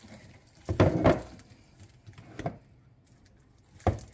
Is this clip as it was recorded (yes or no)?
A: yes